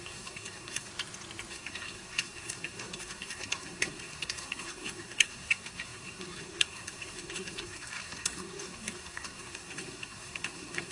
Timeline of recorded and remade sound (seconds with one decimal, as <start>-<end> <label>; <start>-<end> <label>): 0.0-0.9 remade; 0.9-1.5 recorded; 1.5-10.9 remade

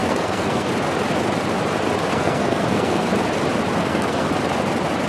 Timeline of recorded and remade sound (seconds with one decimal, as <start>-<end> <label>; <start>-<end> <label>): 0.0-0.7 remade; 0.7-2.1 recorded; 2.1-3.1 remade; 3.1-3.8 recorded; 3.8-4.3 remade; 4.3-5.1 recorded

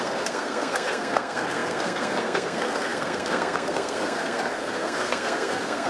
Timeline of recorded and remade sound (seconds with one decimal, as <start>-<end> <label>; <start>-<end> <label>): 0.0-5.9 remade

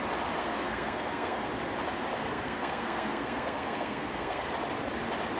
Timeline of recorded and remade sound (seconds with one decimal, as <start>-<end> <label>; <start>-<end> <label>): 0.0-0.4 recorded; 0.4-1.5 remade; 1.5-2.2 recorded; 2.2-4.5 remade; 4.5-5.4 recorded